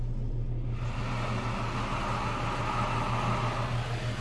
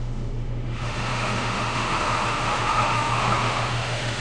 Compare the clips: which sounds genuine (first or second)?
first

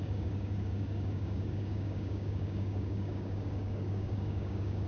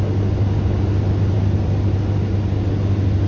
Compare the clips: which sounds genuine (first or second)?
second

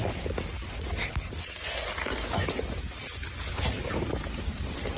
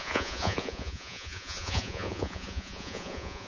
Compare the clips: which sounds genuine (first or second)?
first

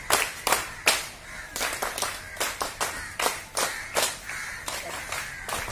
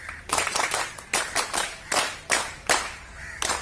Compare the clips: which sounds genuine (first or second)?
first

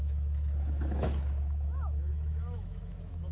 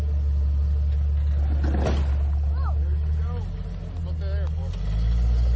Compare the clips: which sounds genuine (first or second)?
second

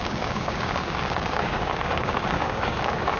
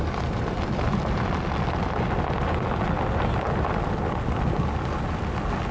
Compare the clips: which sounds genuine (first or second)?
second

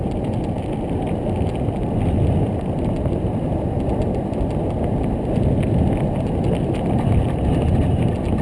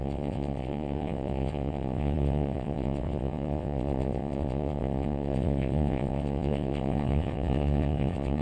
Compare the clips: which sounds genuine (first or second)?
first